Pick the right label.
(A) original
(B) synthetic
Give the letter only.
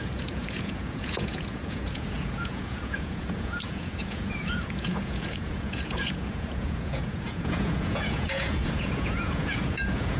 B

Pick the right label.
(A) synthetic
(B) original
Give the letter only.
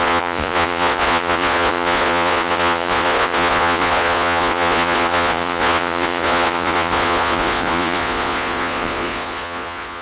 A